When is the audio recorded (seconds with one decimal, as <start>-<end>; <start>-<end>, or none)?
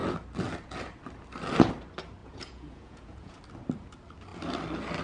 0.0-2.2; 3.4-5.0